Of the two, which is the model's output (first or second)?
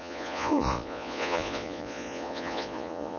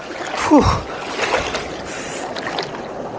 first